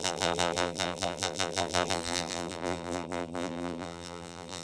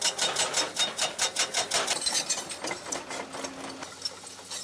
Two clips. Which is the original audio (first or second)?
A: second